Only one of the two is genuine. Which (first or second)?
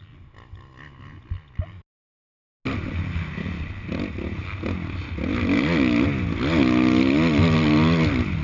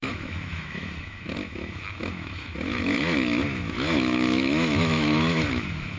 first